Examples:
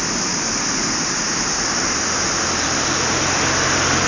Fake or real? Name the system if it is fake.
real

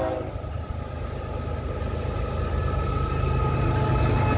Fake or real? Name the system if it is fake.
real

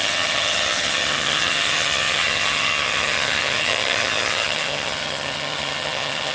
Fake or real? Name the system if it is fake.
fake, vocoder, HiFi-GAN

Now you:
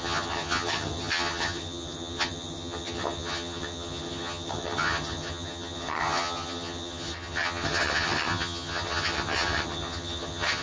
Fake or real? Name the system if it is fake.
fake, vocoder, HiFi-GAN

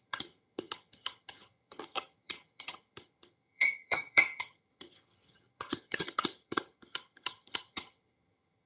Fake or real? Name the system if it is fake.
fake, vocoder, HiFi-GAN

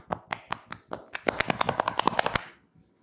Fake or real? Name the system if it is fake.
real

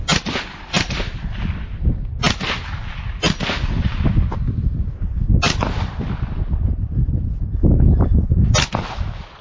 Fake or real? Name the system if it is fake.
real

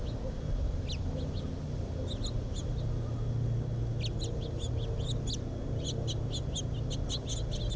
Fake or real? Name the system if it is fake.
real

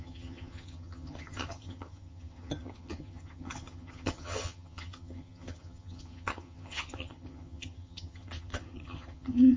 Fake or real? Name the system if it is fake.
fake, vocoder, HiFi-GAN